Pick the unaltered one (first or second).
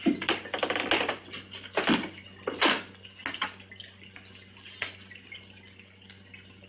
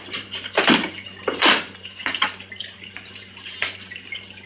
first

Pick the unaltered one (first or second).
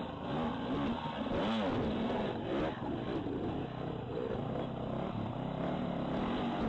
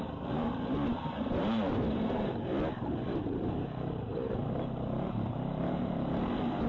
first